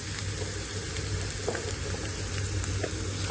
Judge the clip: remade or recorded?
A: recorded